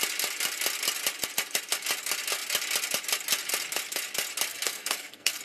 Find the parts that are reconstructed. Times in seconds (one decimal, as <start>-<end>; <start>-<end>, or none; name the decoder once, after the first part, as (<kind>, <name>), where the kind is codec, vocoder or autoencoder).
4.5-5.4 (codec, SNAC)